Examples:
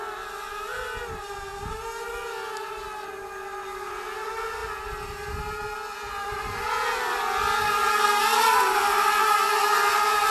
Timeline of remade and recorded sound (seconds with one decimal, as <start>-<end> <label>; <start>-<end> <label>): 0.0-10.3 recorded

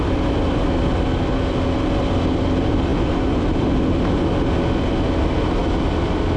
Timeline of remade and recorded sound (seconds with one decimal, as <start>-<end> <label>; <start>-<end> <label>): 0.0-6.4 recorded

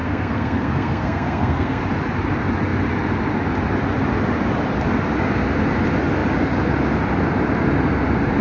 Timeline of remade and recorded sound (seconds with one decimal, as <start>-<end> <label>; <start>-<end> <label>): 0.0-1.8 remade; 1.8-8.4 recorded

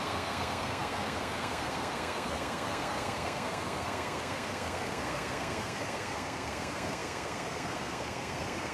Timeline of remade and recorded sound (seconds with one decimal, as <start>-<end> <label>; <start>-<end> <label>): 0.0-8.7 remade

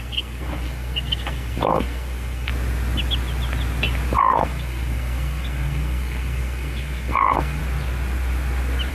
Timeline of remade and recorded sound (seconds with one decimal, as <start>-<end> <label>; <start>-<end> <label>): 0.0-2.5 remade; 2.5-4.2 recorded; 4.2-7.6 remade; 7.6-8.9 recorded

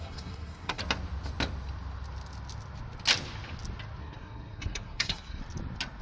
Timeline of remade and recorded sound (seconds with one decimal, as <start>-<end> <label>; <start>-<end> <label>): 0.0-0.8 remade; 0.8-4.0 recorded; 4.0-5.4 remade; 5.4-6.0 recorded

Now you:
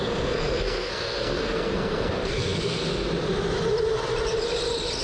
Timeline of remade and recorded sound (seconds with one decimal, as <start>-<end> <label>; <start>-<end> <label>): 0.0-2.9 remade; 2.9-5.0 recorded